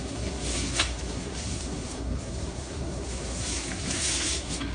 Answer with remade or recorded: remade